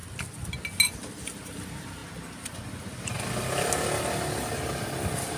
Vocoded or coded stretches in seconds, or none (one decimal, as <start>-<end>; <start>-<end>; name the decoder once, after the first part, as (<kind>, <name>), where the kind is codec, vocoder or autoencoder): 1.1-2.0 (vocoder, BigVGAN v2)